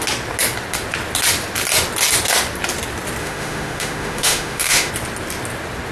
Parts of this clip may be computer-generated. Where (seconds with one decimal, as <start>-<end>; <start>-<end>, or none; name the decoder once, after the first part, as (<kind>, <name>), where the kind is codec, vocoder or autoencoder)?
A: 3.2-4.9 (autoencoder, DAC-VAE)